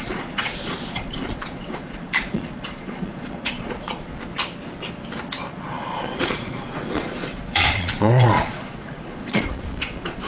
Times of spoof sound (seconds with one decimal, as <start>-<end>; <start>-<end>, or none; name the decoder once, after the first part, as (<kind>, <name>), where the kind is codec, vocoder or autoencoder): 0.0-4.1 (vocoder, Vocos); 5.5-10.3